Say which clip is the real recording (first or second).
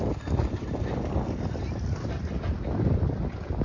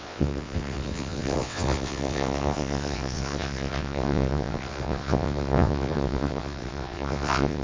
first